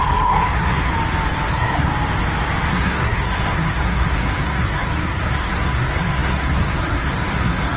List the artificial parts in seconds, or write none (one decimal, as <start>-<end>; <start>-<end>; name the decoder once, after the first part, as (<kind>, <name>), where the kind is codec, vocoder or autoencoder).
0.0-0.9 (codec, SNAC); 1.5-1.9; 2.7-7.8